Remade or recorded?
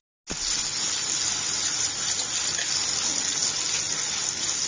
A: recorded